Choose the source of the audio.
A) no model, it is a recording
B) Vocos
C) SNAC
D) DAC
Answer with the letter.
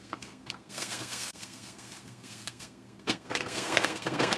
C